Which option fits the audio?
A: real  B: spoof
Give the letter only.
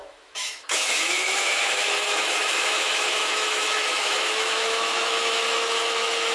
B